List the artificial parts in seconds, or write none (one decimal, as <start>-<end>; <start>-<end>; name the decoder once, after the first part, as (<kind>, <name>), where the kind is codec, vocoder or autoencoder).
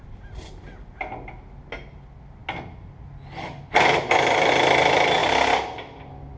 5.2-6.0 (vocoder, BigVGAN v2)